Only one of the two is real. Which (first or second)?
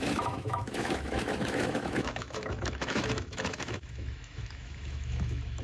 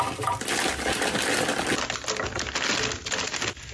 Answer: second